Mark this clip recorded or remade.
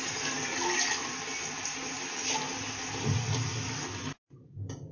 recorded